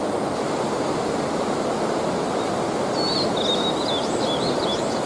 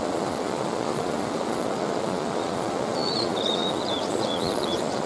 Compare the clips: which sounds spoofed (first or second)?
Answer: second